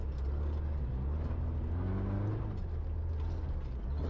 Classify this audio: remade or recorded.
recorded